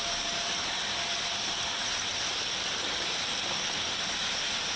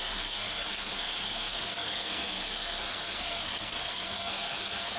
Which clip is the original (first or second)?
first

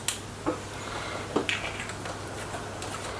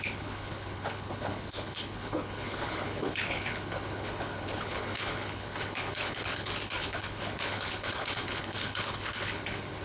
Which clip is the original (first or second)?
first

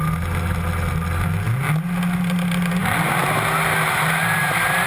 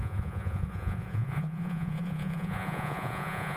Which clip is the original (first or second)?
first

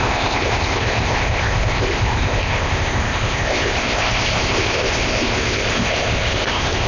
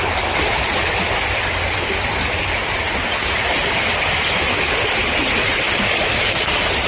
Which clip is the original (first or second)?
second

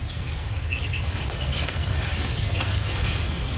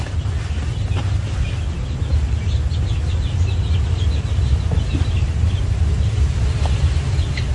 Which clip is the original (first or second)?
second